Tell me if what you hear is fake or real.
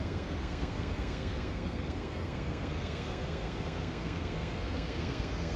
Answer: fake